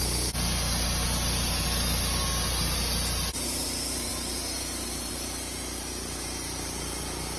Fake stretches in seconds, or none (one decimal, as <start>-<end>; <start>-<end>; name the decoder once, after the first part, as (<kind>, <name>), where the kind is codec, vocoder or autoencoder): none